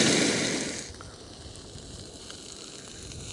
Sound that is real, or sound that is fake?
real